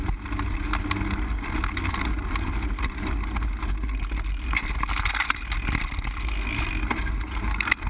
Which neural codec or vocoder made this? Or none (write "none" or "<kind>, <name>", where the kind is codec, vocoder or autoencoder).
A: none